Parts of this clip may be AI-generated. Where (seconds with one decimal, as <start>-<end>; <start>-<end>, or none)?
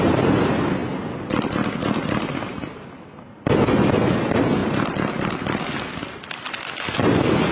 none